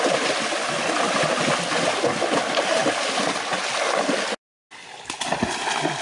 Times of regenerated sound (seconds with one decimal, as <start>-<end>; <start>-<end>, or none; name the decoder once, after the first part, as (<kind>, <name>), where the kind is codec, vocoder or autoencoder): none